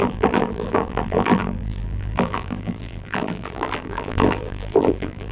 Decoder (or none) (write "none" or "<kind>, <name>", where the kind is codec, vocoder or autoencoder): vocoder, BigVGAN v2